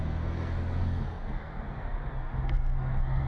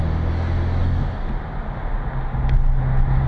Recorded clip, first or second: second